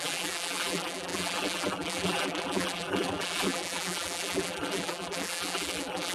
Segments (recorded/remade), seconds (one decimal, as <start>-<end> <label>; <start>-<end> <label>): 0.0-6.1 remade